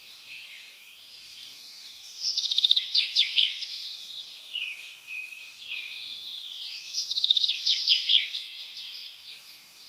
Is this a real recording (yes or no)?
no